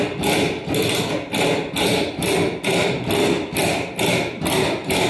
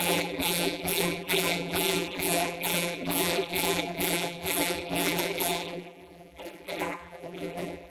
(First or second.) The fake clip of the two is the second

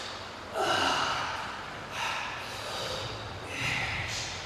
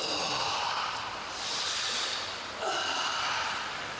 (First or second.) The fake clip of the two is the second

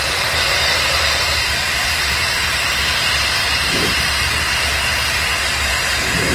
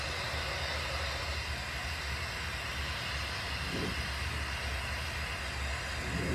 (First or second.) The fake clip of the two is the first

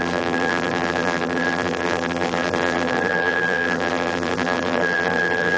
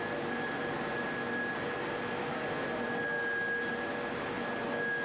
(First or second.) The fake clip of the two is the first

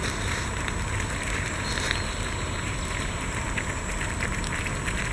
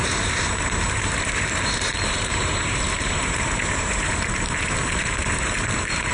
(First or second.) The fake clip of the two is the second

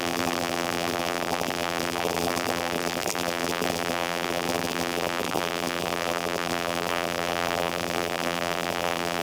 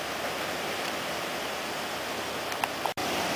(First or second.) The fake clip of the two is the first